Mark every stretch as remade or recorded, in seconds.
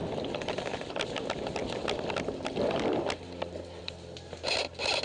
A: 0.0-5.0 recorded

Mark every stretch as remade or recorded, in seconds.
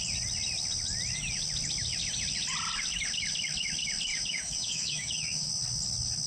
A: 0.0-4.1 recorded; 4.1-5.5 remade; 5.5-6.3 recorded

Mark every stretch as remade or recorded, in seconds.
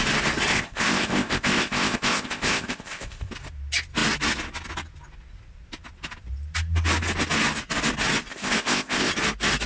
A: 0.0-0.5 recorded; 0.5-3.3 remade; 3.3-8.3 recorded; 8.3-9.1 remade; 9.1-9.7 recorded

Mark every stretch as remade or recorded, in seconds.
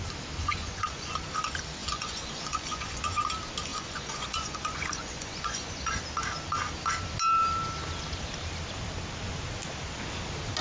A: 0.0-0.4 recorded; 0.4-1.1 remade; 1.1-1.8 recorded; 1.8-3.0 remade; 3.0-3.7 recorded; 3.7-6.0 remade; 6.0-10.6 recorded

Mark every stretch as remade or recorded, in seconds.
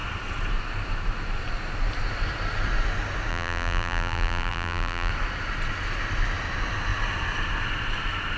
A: 0.0-3.3 recorded; 3.3-5.1 remade; 5.1-8.4 recorded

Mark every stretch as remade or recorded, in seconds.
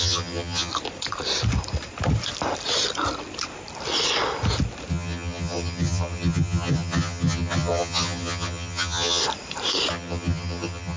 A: 0.0-0.7 remade; 0.7-4.9 recorded; 4.9-9.2 remade; 9.2-9.9 recorded; 9.9-11.0 remade